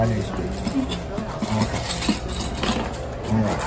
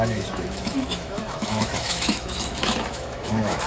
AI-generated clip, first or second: second